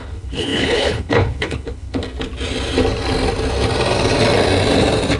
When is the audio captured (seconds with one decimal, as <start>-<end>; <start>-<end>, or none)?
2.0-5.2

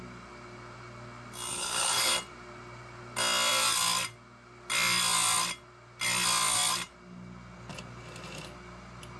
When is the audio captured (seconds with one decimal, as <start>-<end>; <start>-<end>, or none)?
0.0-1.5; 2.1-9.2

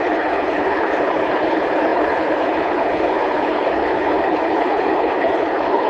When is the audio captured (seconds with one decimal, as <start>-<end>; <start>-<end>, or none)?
none

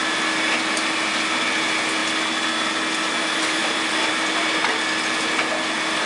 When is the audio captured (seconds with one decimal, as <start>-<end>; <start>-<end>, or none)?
0.0-6.1

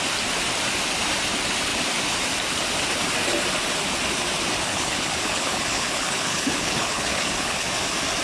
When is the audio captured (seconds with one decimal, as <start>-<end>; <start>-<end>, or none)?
0.0-4.7; 7.7-8.2

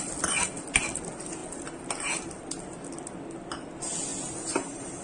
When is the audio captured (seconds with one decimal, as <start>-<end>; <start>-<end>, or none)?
0.0-5.0

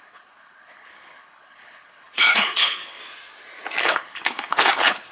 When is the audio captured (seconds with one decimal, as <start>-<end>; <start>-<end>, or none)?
3.0-3.8

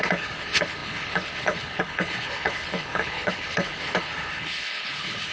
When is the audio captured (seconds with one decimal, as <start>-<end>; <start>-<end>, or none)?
none